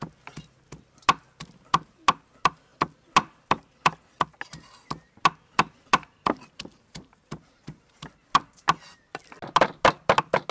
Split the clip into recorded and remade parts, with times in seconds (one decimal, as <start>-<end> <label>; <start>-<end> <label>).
0.0-5.9 recorded; 5.9-8.1 remade; 8.1-10.5 recorded